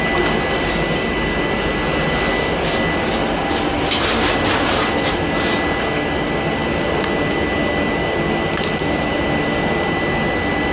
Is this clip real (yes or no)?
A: yes